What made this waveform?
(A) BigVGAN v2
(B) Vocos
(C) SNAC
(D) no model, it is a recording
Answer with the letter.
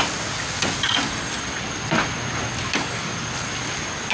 D